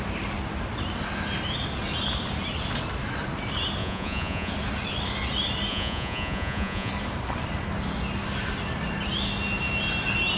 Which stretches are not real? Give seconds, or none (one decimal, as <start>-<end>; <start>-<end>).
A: 3.8-4.5; 5.7-6.9